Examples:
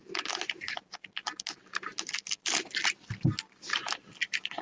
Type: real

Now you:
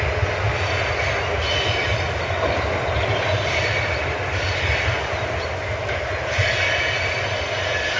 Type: real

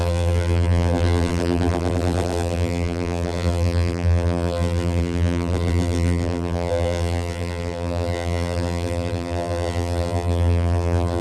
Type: fake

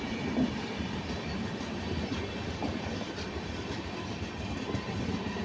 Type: fake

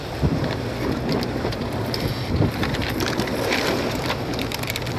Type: fake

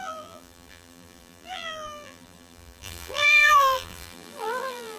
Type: fake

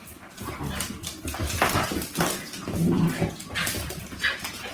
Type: real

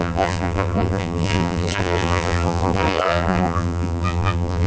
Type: fake